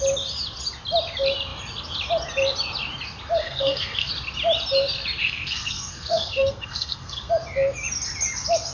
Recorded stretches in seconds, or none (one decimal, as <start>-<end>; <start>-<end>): 0.0-3.4; 4.1-5.2; 7.3-8.7